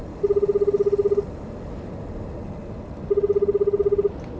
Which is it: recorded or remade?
recorded